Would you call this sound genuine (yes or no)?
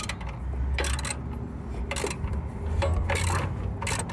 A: yes